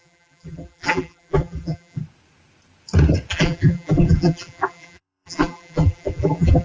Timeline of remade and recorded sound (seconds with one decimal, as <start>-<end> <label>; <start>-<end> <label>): 0.0-2.0 remade; 2.0-3.3 recorded; 3.3-6.6 remade